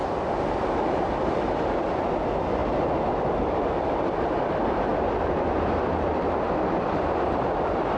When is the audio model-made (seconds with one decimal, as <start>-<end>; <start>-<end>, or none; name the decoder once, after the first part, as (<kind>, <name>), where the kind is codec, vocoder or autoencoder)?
none